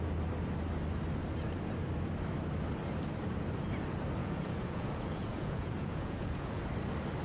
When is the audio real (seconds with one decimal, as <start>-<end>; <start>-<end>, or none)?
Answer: 0.0-4.2; 6.6-7.2